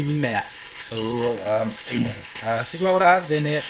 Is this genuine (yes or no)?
no